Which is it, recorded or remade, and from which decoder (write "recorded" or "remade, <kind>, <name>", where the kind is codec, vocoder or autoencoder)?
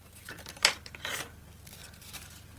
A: remade, vocoder, BigVGAN v2